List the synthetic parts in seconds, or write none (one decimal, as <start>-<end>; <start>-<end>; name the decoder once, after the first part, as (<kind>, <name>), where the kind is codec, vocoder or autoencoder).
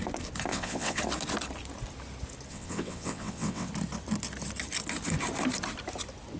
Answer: 0.5-1.0 (vocoder, WaveNeXt); 2.5-3.7